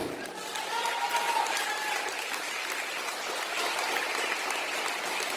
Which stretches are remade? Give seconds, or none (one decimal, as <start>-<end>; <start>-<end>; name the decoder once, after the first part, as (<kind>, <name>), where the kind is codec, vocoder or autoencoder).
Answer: none